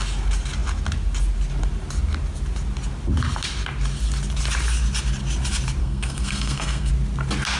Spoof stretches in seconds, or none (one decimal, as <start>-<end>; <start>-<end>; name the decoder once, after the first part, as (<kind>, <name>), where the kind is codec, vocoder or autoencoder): 5.8-6.9 (codec, SNAC)